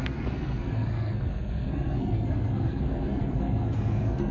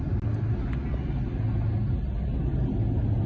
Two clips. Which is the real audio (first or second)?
second